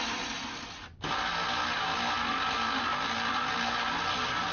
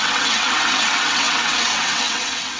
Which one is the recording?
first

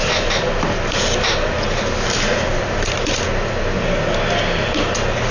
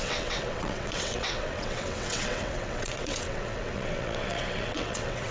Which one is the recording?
first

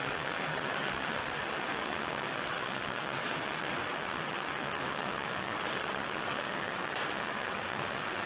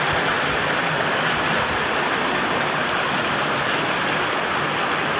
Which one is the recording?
second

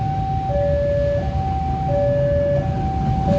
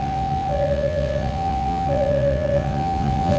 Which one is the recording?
first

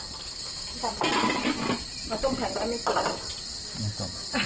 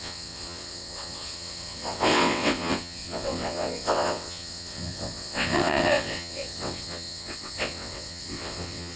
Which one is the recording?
first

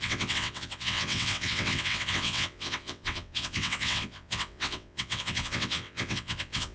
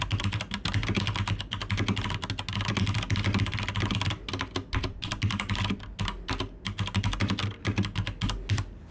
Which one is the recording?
second